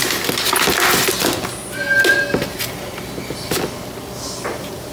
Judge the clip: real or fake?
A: real